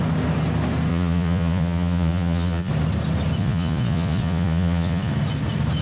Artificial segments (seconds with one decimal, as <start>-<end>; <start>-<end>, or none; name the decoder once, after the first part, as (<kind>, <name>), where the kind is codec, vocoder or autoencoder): 0.9-2.7 (vocoder, Vocos); 3.4-5.1